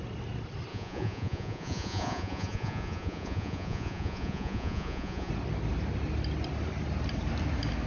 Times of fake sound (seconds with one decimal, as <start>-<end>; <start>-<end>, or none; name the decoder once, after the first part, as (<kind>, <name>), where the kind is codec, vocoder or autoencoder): 0.7-5.3 (vocoder, Vocos)